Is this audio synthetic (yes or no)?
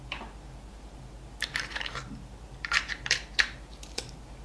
yes